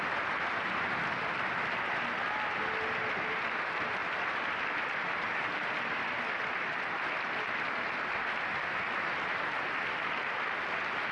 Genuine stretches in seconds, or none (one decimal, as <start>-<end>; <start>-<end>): 0.0-11.1